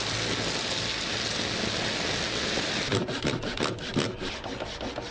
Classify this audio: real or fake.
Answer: real